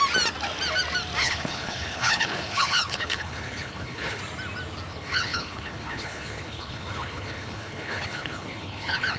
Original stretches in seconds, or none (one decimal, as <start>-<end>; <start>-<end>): 0.0-1.2; 4.2-4.9